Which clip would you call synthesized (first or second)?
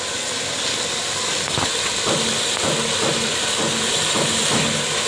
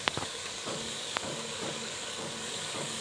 second